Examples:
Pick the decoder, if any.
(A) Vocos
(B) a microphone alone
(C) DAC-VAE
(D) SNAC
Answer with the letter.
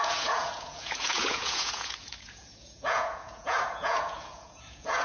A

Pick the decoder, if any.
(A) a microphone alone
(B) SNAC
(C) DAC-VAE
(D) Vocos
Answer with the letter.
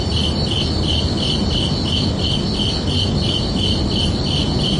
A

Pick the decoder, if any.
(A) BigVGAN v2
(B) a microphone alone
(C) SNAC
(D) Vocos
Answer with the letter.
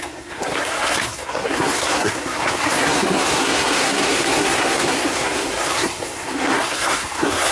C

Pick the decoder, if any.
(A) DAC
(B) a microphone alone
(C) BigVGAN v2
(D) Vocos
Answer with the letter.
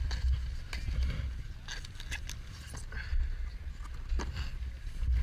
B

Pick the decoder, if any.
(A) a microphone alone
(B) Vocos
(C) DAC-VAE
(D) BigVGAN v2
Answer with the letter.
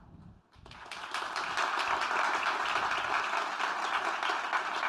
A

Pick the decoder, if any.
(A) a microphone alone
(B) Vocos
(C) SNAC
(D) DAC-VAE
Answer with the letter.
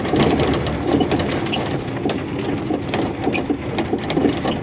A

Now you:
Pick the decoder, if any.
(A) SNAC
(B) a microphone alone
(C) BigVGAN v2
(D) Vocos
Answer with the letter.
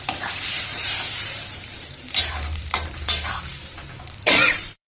C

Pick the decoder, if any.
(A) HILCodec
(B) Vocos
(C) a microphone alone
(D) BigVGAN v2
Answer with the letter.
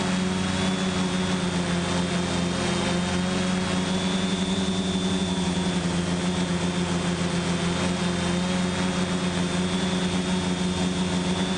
C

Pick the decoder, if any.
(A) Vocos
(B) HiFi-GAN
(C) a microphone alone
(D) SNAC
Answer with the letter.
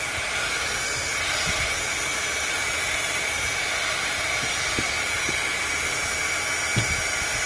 C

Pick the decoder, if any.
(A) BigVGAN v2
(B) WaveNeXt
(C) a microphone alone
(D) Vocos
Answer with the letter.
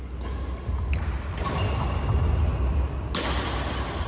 C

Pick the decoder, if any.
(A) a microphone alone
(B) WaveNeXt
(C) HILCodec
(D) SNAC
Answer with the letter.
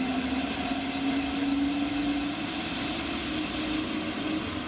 A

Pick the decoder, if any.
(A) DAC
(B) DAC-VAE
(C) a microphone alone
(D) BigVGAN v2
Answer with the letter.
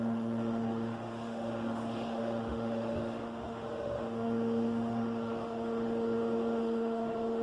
B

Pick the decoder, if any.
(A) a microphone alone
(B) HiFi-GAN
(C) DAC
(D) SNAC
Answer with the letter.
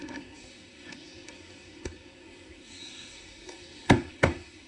D